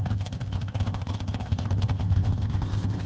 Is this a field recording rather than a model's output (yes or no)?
no